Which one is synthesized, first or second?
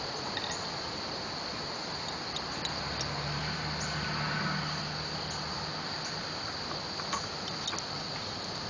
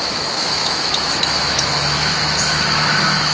second